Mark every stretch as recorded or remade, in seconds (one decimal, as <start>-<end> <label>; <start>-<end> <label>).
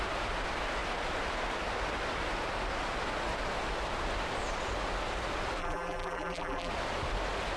0.0-5.6 recorded; 5.6-6.7 remade; 6.7-7.6 recorded